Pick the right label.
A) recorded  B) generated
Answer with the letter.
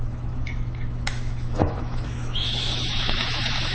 B